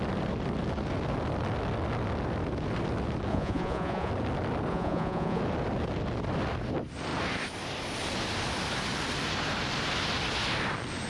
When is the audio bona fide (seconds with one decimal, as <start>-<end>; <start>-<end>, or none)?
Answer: 0.0-3.3; 4.1-4.7; 5.4-11.1